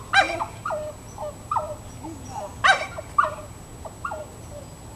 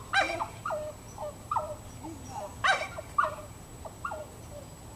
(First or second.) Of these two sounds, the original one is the first